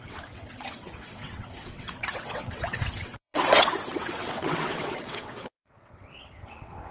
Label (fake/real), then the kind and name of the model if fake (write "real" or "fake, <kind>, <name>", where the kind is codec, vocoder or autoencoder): fake, vocoder, WaveNeXt